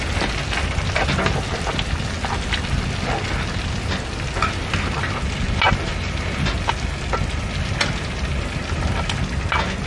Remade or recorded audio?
recorded